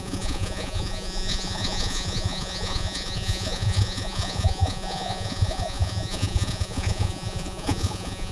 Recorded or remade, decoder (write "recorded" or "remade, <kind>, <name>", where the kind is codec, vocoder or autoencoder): remade, vocoder, Vocos